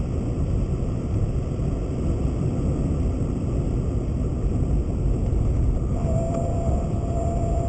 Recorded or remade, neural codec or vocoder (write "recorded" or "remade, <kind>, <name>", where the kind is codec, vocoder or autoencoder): recorded